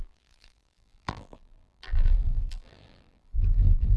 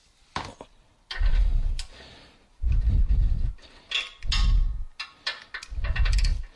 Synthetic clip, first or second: first